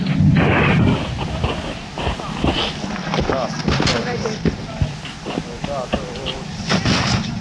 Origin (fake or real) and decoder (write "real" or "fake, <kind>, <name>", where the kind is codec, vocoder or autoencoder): real